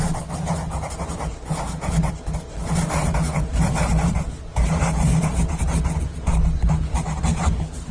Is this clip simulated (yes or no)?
no